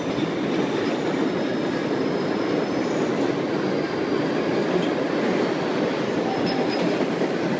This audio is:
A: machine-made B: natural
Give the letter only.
B